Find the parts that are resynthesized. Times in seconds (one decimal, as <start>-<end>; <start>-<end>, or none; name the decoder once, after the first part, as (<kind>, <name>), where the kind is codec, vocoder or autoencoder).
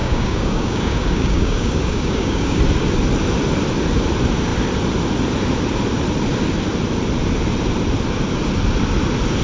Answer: 0.0-2.6 (codec, DAC)